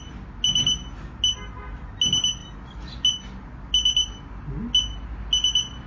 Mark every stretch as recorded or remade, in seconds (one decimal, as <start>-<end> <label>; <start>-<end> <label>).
0.0-5.9 recorded